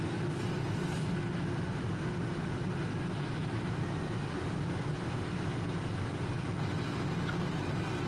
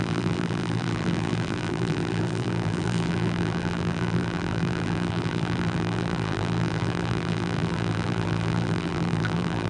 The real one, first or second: first